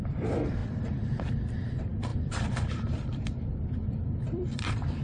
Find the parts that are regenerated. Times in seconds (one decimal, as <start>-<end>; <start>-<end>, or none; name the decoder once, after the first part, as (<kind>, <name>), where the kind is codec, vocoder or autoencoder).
0.0-0.6 (vocoder, BigVGAN v2); 1.2-5.0